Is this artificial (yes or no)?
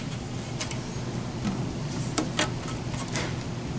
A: no